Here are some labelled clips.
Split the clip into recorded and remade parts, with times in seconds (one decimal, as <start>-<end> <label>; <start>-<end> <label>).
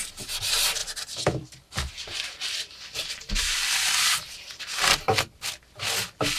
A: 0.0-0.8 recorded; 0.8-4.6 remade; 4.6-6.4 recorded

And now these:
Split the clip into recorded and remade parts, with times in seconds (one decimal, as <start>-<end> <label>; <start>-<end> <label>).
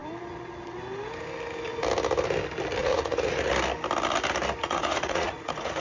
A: 0.0-2.8 recorded; 2.8-3.5 remade; 3.5-4.6 recorded; 4.6-5.8 remade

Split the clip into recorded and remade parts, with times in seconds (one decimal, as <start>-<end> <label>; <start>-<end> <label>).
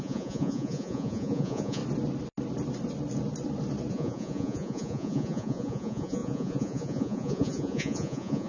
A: 0.0-1.8 remade; 1.8-3.9 recorded; 3.9-8.5 remade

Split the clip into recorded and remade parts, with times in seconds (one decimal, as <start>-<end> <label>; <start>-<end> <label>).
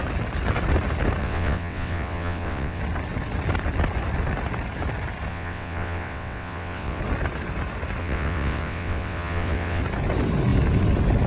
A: 0.0-1.2 recorded; 1.2-2.8 remade; 2.8-5.3 recorded; 5.3-7.0 remade; 7.0-8.0 recorded; 8.0-9.8 remade; 9.8-11.3 recorded